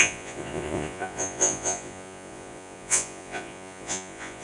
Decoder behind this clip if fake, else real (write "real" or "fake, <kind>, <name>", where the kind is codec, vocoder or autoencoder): fake, vocoder, Vocos